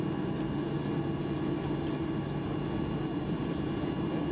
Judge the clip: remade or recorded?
recorded